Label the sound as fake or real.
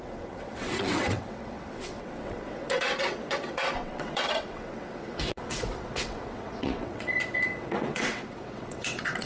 fake